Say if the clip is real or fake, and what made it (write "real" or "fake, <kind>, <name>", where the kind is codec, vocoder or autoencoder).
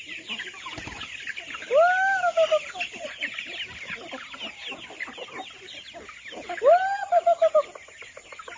real